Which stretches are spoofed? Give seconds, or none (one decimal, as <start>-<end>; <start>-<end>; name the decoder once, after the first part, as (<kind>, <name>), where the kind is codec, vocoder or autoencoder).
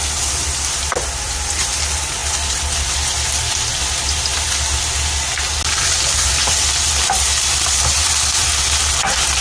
none